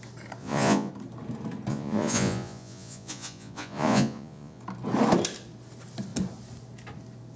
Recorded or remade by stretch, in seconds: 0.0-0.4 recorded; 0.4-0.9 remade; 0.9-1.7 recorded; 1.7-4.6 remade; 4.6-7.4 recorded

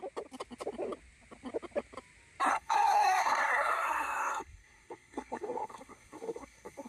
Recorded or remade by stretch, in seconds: 0.0-2.5 recorded; 2.5-6.9 remade

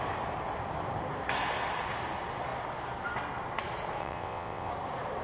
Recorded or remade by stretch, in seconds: 0.0-4.0 recorded; 4.0-4.7 remade; 4.7-5.2 recorded

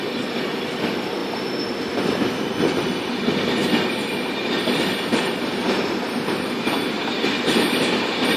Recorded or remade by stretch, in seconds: 0.0-1.2 remade; 1.2-3.2 recorded; 3.2-3.6 remade; 3.6-4.6 recorded; 4.6-8.4 remade

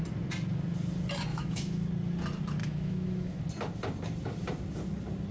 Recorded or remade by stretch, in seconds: 0.0-1.3 recorded; 1.3-1.9 remade; 1.9-2.6 recorded; 2.6-3.4 remade; 3.4-5.3 recorded

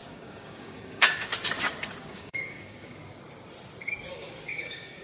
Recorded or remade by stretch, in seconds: 0.0-1.3 remade; 1.3-2.0 recorded; 2.0-3.0 remade; 3.0-4.1 recorded; 4.1-5.0 remade

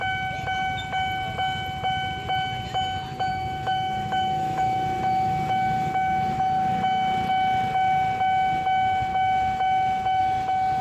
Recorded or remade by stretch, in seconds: 0.0-3.3 recorded; 3.3-6.4 remade; 6.4-9.1 recorded; 9.1-10.2 remade; 10.2-10.8 recorded

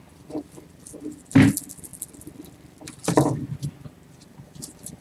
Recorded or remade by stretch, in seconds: 0.0-5.0 recorded